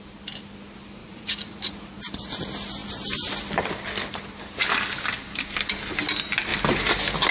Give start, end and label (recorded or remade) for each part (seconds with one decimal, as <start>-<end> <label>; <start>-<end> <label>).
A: 0.0-1.0 recorded; 1.0-1.6 remade; 1.6-7.3 recorded